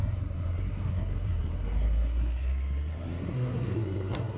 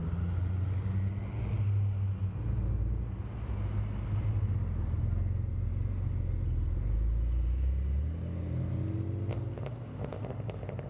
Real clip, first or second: second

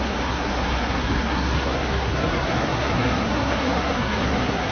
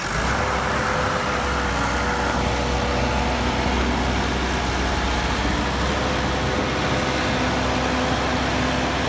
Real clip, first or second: second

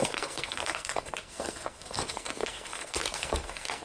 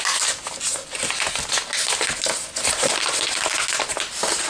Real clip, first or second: second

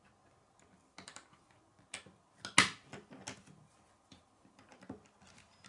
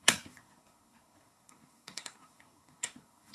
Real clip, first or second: first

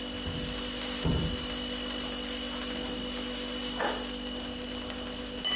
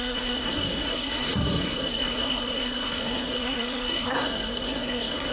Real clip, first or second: first